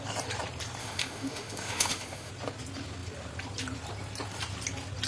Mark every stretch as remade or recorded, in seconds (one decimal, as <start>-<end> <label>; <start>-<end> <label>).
0.0-0.8 recorded; 0.8-2.3 remade; 2.3-5.1 recorded